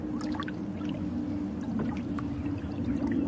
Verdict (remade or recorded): recorded